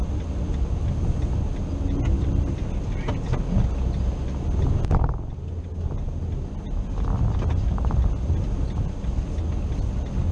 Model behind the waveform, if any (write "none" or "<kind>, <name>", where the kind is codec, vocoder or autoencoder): none